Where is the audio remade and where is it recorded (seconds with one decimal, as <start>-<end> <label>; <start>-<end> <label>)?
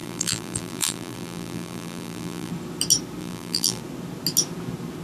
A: 0.0-2.5 remade; 2.5-3.2 recorded; 3.2-3.8 remade; 3.8-5.0 recorded